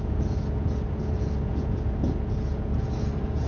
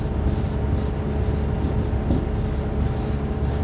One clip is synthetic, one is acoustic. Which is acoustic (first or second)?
second